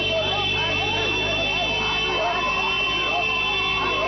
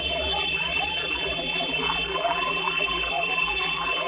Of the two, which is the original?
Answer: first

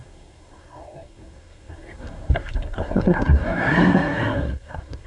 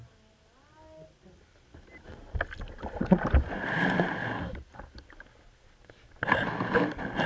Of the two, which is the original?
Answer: second